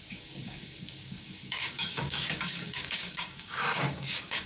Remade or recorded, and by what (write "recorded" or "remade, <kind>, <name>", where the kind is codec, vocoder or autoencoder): remade, codec, DAC